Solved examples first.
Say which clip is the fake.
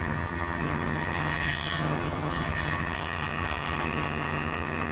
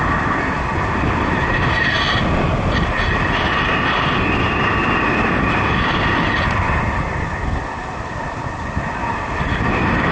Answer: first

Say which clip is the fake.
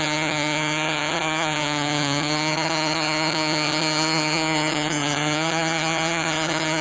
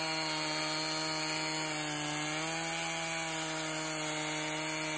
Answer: first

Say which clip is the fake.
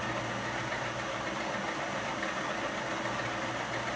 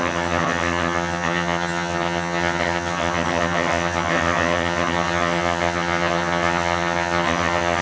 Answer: second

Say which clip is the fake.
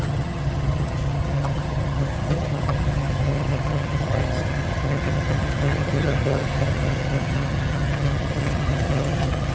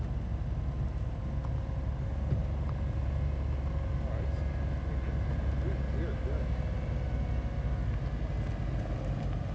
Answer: first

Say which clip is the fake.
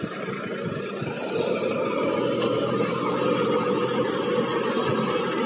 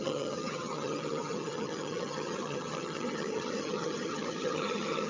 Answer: second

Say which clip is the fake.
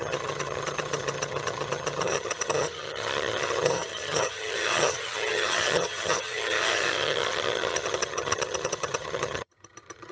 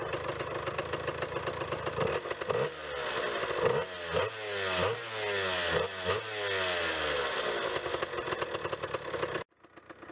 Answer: first